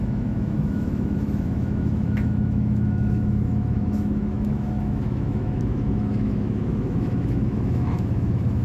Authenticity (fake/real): fake